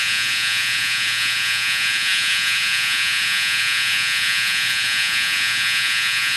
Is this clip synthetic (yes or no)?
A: yes